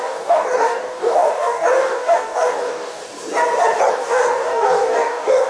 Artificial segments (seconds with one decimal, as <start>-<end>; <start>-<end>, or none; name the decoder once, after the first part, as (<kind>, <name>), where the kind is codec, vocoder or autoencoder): 0.0-3.0 (codec, DAC); 3.9-5.5